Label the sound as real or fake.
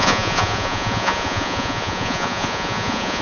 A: fake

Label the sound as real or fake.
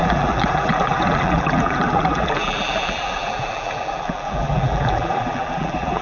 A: fake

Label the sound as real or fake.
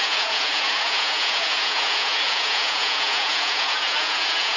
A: fake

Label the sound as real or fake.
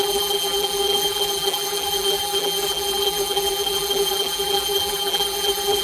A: fake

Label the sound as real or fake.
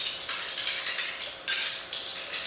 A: real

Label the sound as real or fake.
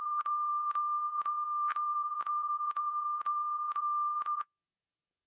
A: fake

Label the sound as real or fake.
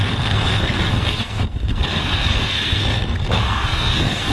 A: fake